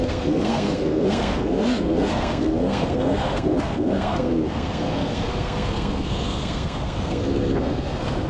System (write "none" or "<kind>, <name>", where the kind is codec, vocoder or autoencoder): codec, SNAC